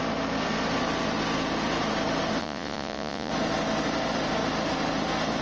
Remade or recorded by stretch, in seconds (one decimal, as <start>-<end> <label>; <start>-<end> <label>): 0.0-2.4 recorded; 2.4-3.3 remade; 3.3-5.4 recorded